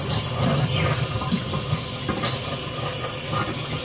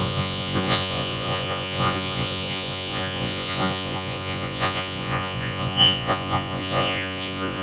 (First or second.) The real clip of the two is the first